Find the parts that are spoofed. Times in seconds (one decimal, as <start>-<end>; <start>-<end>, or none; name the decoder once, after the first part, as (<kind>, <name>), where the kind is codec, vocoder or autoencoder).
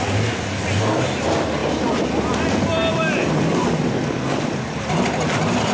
none